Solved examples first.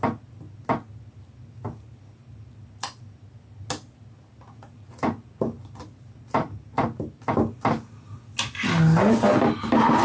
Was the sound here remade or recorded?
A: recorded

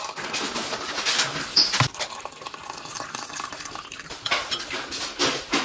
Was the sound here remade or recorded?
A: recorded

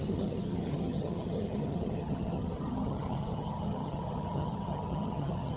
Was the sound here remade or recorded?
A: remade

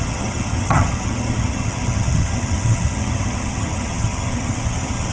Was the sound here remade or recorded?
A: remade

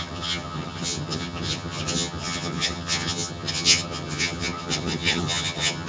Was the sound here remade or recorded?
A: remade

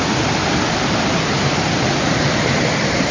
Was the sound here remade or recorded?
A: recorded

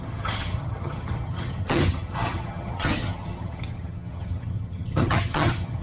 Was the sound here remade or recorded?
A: remade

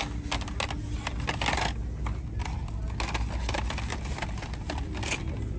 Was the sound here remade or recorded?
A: recorded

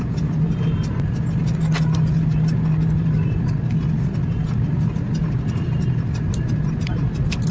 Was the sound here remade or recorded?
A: recorded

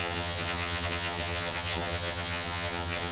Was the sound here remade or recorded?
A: remade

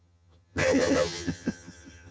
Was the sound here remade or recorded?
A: remade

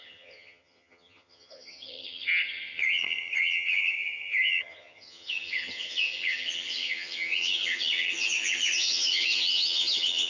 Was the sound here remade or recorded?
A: remade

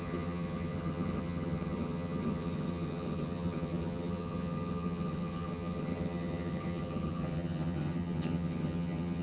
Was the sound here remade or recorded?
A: remade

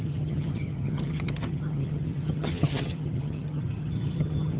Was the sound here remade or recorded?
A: remade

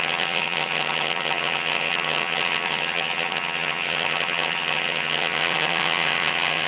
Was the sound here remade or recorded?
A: remade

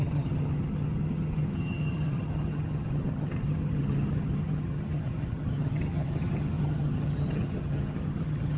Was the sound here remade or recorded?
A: remade